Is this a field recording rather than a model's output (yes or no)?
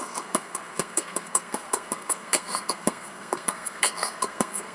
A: no